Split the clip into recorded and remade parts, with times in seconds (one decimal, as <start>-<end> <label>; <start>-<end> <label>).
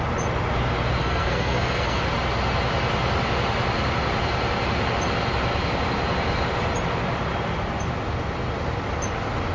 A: 0.0-1.0 recorded; 1.0-2.0 remade; 2.0-9.5 recorded